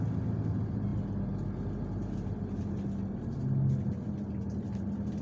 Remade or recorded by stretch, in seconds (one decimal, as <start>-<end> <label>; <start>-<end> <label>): 0.0-5.2 recorded